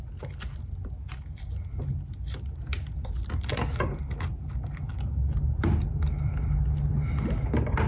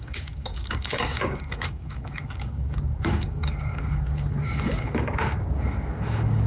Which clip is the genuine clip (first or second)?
first